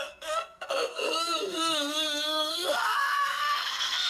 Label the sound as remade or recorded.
remade